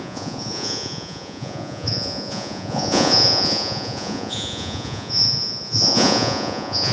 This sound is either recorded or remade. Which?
remade